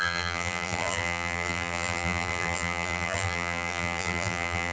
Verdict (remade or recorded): remade